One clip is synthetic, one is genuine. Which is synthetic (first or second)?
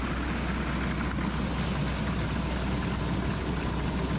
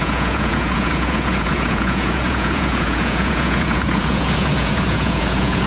second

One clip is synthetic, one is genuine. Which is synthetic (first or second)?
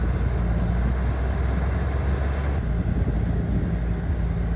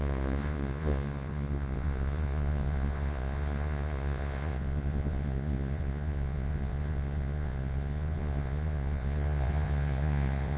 second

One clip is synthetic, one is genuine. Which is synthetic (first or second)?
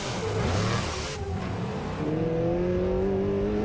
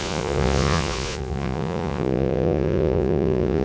second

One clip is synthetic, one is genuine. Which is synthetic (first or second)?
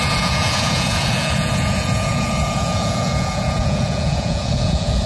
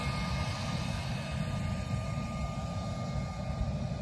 first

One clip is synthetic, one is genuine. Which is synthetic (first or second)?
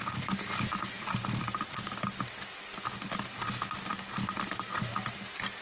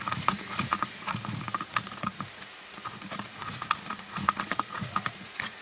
second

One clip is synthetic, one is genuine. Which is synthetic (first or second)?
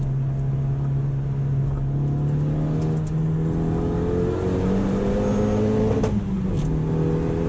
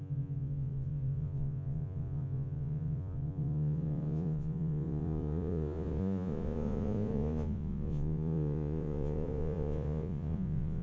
second